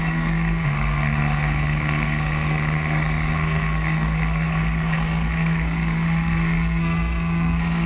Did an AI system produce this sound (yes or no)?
yes